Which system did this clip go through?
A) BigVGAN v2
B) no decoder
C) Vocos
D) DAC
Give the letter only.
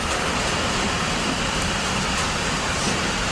A